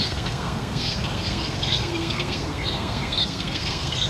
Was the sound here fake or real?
fake